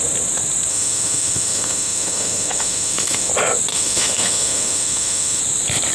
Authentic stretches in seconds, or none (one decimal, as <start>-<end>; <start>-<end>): 0.0-0.7; 3.3-3.7; 5.4-5.9